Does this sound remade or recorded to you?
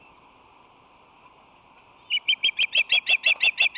recorded